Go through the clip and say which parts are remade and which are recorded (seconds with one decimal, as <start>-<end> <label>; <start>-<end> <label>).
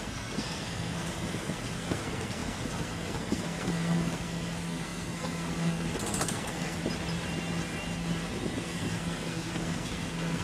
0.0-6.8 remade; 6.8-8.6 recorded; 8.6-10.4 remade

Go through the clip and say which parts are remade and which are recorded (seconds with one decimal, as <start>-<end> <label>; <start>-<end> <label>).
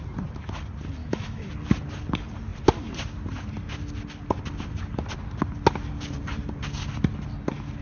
0.0-1.0 recorded; 1.0-1.5 remade; 1.5-7.8 recorded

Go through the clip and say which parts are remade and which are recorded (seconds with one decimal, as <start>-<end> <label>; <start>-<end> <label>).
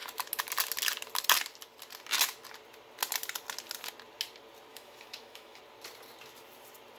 0.0-4.7 recorded; 4.7-5.6 remade; 5.6-7.0 recorded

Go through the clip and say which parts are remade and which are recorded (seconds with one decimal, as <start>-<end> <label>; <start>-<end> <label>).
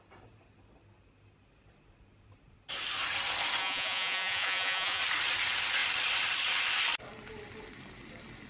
0.0-3.6 recorded; 3.6-5.0 remade; 5.0-8.5 recorded